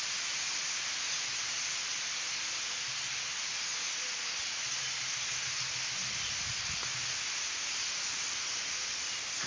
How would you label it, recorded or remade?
recorded